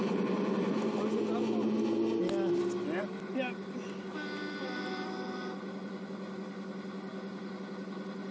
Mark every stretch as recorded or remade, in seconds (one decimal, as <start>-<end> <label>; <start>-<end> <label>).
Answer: 0.0-1.1 remade; 1.1-8.3 recorded